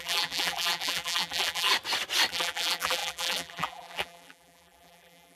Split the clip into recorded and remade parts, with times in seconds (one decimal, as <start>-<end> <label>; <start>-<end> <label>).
0.0-1.7 remade; 1.7-2.3 recorded; 2.3-5.4 remade

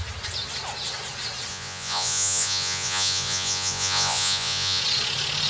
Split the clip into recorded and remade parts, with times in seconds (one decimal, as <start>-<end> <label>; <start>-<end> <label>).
0.0-1.5 recorded; 1.5-4.8 remade; 4.8-5.5 recorded